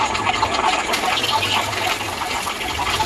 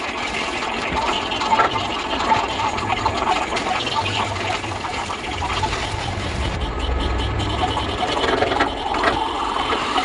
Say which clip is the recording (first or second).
first